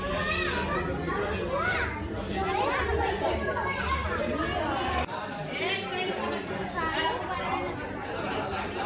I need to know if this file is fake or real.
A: real